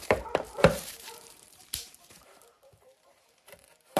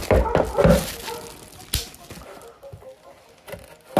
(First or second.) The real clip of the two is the second